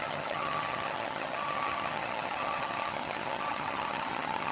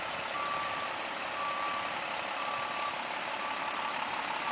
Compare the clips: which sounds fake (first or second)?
first